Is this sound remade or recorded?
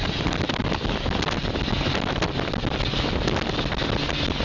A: recorded